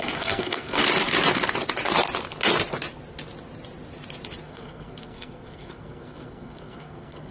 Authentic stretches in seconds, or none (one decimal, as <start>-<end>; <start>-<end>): 0.8-4.4

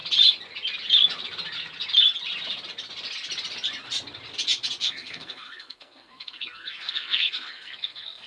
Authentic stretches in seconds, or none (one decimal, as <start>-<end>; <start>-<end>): 0.0-4.8

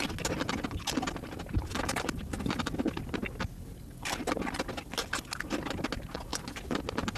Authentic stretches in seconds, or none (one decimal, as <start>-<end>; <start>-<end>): 0.0-7.2

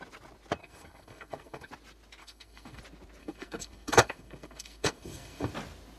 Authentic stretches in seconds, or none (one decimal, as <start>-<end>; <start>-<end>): 0.0-0.6; 1.7-2.2; 2.8-3.2; 5.5-6.0

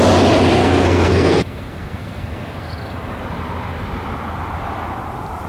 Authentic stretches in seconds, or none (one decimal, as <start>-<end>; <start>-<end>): 0.0-0.6; 3.2-5.5